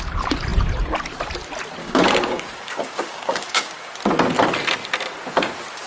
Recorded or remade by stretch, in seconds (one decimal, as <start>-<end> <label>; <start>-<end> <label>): 0.0-1.8 recorded; 1.8-3.9 remade; 3.9-5.9 recorded